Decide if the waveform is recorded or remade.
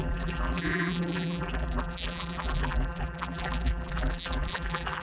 remade